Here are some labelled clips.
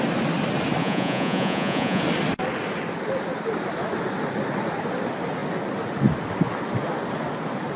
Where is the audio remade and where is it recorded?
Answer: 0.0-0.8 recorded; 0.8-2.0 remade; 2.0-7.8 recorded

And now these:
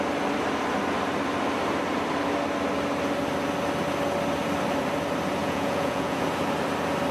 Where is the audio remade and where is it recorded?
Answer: 0.0-5.4 recorded; 5.4-6.2 remade; 6.2-7.1 recorded

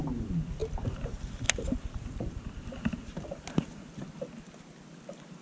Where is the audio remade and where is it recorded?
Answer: 0.0-5.4 recorded

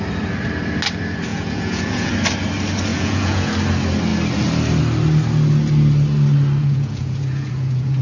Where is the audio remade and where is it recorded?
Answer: 0.0-1.3 recorded; 1.3-2.1 remade; 2.1-2.9 recorded; 2.9-3.5 remade; 3.5-6.6 recorded; 6.6-8.0 remade

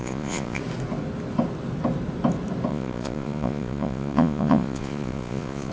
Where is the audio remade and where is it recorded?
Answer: 0.0-0.6 remade; 0.6-2.7 recorded; 2.7-5.7 remade